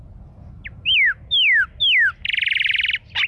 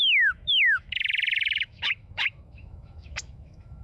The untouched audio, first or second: first